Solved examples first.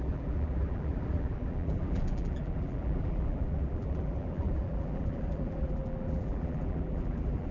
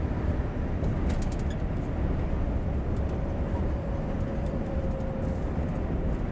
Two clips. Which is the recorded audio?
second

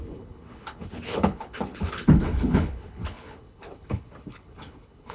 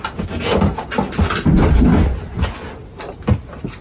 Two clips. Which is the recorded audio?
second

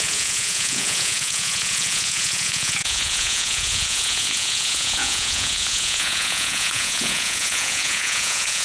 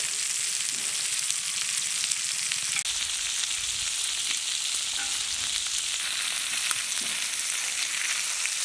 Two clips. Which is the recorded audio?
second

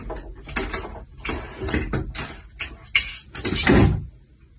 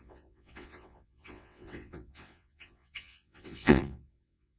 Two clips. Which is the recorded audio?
first